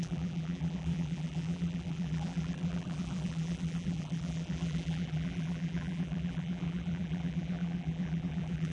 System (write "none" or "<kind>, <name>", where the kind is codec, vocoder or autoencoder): vocoder, BigVGAN v2